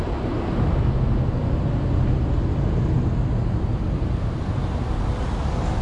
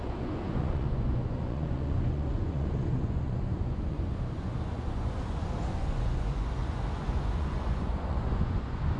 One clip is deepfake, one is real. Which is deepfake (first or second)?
second